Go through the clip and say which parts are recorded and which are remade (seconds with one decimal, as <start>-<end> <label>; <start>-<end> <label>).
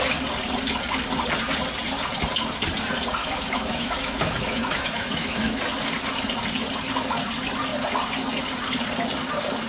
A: 0.0-3.2 recorded; 3.2-5.6 remade; 5.6-9.7 recorded